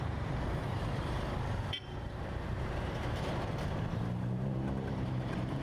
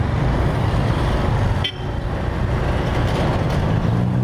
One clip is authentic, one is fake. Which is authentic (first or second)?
second